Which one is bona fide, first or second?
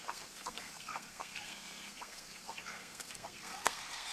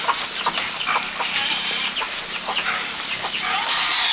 second